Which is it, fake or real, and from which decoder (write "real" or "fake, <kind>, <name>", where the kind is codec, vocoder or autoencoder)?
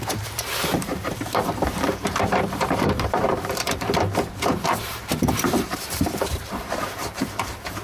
fake, vocoder, BigVGAN v2